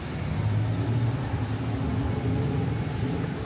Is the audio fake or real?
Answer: real